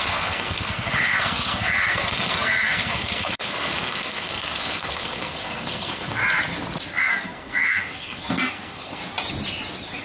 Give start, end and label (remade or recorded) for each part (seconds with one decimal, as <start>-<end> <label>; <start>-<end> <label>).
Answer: 0.0-6.2 remade; 6.2-7.0 recorded; 7.0-9.0 remade; 9.0-10.0 recorded